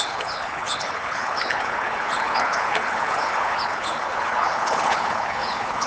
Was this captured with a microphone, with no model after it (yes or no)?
no